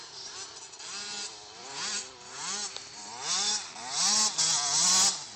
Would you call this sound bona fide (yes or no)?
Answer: yes